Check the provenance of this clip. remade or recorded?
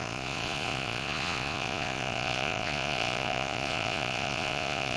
remade